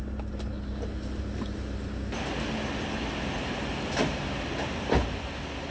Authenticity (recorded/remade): recorded